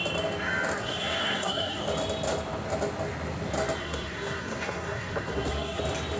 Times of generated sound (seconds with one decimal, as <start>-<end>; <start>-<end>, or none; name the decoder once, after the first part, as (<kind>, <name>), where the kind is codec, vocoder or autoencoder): 0.8-1.8 (codec, SNAC); 3.8-5.8